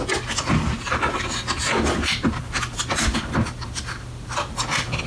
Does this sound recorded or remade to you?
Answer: recorded